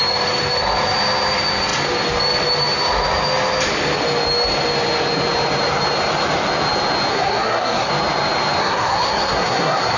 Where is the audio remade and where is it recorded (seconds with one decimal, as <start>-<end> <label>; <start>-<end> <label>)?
0.0-7.1 recorded; 7.1-7.9 remade; 7.9-8.6 recorded; 8.6-10.0 remade